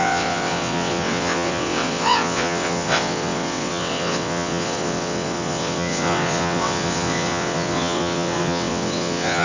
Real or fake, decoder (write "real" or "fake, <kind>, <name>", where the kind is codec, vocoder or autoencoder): fake, vocoder, WaveNeXt